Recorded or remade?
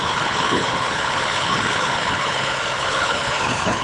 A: remade